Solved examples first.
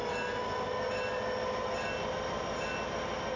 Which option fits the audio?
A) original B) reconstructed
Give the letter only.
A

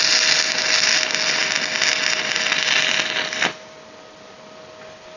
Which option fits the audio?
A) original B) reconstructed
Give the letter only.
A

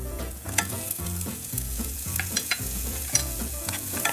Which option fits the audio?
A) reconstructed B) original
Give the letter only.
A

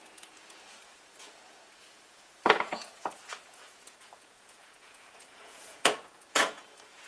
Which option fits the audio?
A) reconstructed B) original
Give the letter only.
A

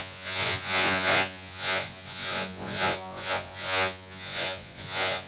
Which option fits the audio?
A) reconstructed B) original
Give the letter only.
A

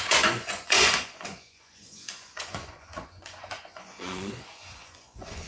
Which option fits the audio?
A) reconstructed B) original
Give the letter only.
A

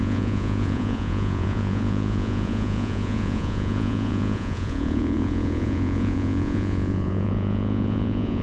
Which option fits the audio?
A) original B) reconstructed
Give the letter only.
B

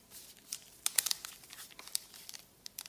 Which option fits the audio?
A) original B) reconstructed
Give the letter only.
A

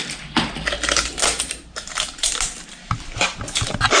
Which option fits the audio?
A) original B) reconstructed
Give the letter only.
A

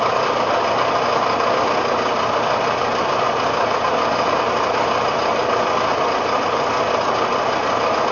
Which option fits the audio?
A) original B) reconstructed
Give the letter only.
A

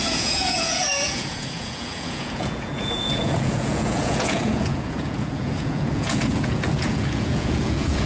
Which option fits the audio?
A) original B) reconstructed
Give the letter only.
B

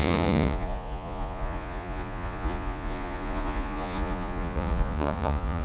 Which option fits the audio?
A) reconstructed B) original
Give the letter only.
A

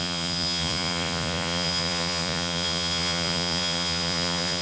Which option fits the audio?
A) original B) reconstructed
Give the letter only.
B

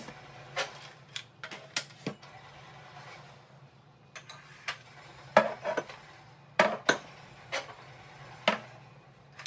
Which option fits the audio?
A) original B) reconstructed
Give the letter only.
A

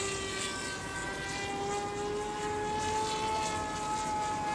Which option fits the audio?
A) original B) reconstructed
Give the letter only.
A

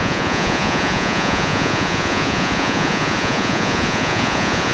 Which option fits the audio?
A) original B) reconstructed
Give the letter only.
B